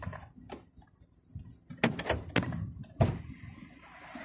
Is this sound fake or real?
real